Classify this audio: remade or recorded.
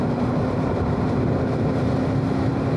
remade